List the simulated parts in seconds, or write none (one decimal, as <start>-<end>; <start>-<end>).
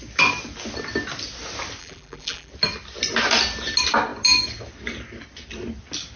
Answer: 1.8-2.5